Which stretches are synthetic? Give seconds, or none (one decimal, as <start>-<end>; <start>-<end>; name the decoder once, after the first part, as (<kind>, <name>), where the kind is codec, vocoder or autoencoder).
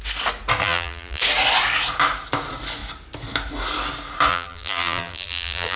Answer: 0.6-1.2 (vocoder, BigVGAN v2); 4.3-5.8